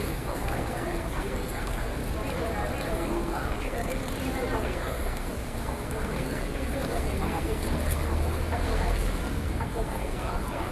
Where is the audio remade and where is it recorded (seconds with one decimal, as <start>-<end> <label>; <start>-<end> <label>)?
0.0-2.0 remade; 2.0-2.9 recorded; 2.9-4.0 remade; 4.0-4.6 recorded; 4.6-10.7 remade